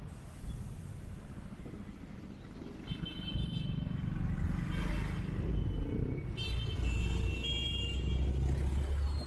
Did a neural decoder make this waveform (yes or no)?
no